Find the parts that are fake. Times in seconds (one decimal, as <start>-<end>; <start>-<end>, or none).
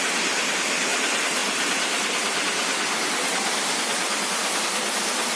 none